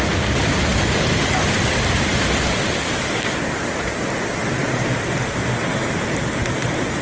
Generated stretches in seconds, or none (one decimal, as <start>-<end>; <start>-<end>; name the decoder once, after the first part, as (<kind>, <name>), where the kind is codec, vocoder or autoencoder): none